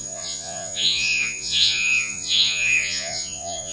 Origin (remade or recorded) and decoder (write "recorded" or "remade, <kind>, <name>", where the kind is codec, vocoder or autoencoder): remade, vocoder, Vocos